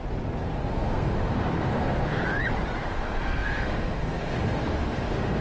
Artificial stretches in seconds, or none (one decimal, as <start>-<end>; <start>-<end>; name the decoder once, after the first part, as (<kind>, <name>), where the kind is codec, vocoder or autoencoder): 0.4-2.2 (codec, SNAC); 2.8-5.4